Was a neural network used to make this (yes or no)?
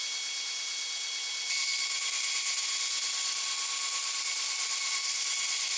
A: no